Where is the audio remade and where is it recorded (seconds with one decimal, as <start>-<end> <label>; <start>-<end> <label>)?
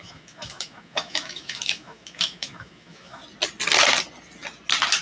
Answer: 0.0-3.2 remade; 3.2-5.0 recorded